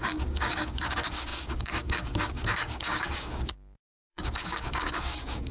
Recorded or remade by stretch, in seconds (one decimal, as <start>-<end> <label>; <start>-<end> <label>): 0.0-5.5 remade